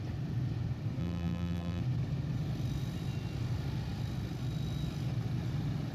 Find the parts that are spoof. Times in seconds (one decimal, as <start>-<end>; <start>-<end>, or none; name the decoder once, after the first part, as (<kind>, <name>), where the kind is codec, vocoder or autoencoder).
1.0-1.8 (vocoder, BigVGAN v2)